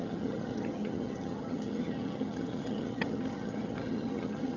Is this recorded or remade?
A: remade